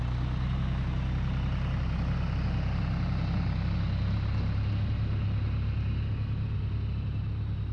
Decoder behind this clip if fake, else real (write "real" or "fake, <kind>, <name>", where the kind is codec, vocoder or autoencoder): real